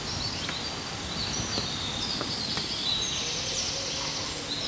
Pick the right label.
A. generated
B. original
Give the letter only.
B